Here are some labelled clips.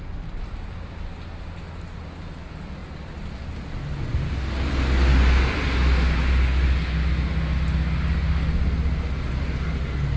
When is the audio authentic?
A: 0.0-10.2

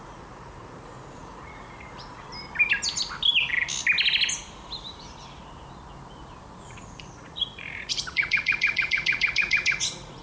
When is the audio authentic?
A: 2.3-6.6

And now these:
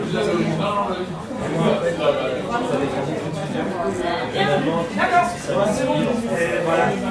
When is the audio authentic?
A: 0.0-7.1